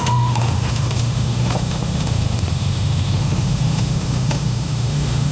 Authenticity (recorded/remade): remade